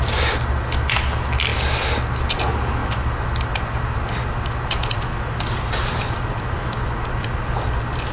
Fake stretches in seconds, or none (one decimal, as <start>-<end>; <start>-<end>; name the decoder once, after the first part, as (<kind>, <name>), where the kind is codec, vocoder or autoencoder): none

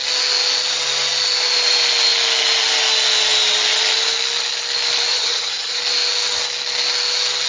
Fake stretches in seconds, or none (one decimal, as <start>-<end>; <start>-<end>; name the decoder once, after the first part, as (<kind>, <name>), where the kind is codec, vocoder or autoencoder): 5.1-5.8 (vocoder, HiFi-GAN)

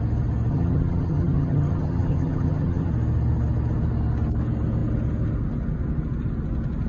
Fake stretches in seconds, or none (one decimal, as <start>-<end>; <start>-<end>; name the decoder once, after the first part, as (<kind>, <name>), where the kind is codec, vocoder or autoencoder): 0.5-2.9 (vocoder, HiFi-GAN)

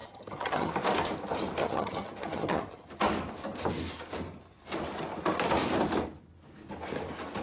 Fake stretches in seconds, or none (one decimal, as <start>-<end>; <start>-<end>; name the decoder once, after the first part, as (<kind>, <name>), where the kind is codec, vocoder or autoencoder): 0.0-0.7 (vocoder, HiFi-GAN); 1.6-2.9

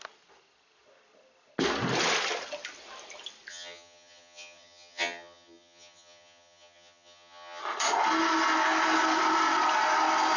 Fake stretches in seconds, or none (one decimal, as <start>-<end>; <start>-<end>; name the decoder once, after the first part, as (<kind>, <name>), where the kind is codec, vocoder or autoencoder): 3.5-7.6 (vocoder, HiFi-GAN)

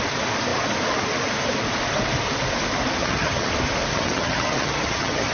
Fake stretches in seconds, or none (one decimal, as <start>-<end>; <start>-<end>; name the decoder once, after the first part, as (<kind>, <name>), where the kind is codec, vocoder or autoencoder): 3.0-3.5 (vocoder, HiFi-GAN); 3.9-5.3